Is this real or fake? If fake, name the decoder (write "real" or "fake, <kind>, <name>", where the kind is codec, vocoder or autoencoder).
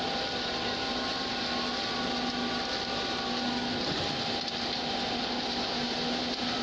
real